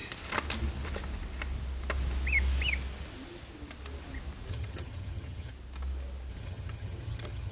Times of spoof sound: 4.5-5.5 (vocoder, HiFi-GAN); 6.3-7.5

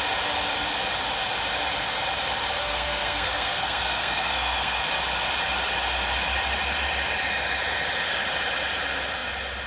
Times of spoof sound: 2.6-4.8 (codec, SNAC)

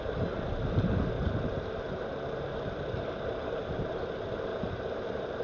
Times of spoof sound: 4.5-5.4 (vocoder, BigVGAN v2)

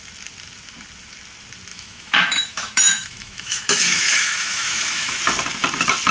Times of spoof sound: 1.7-5.2 (autoencoder, DAC-VAE)

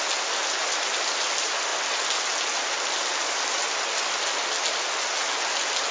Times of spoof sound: none

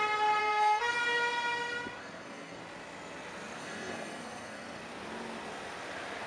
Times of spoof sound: 0.4-0.9 (codec, SNAC); 2.0-2.6; 3.6-4.8

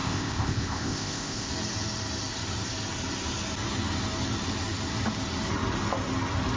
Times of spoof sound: 0.0-1.5 (codec, ZipCodec)

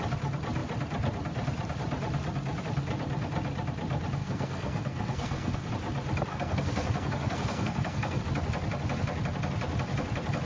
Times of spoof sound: 4.2-5.7 (codec, SNAC); 6.3-8.2